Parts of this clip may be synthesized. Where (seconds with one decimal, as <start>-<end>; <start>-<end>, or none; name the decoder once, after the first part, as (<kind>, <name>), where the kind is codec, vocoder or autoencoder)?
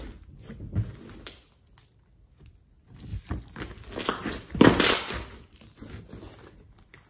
none